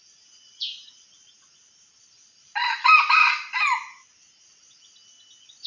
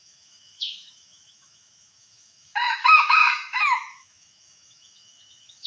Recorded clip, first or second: first